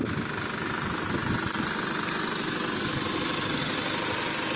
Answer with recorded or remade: recorded